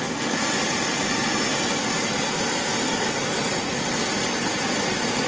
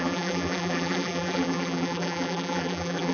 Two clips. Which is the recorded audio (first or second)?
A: first